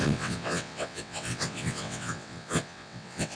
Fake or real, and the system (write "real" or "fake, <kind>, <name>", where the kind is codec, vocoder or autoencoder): fake, vocoder, WaveNeXt